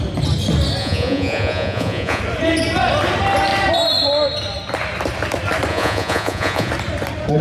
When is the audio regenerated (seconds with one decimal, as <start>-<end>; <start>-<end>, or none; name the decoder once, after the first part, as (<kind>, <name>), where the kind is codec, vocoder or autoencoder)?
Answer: 0.8-2.2 (vocoder, Vocos); 5.7-6.7

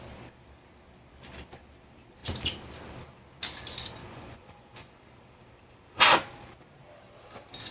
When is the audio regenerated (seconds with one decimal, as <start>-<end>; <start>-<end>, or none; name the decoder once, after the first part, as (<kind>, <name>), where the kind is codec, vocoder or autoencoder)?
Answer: 4.0-4.9 (vocoder, Vocos)

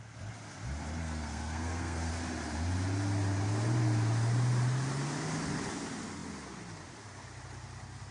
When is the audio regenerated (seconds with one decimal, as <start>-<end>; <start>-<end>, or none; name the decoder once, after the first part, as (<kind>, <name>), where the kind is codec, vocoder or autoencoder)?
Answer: 1.0-2.1 (codec, SNAC)

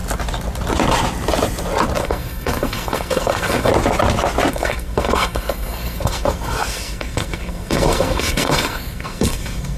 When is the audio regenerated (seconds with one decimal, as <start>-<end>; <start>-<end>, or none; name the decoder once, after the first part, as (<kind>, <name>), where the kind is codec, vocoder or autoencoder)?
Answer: 2.0-3.7 (codec, SNAC); 4.5-9.8